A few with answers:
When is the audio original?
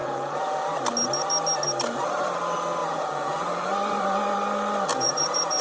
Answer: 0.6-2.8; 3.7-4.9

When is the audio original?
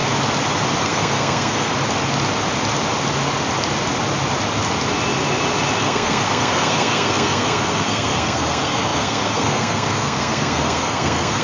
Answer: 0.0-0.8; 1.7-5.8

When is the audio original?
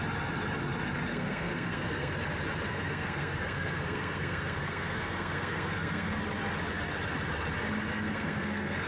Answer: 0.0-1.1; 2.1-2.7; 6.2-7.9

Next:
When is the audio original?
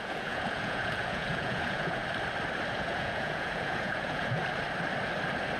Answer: 2.0-2.7; 4.4-5.6